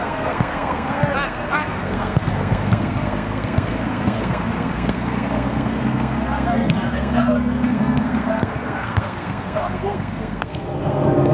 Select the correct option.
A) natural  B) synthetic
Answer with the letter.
B